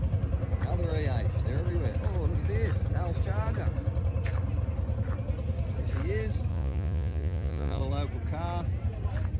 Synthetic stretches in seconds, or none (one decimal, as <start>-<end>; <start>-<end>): 6.5-7.8